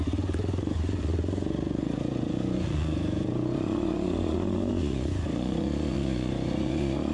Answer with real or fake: fake